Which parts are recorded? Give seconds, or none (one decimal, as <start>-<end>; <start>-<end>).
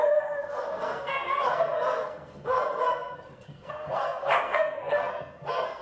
none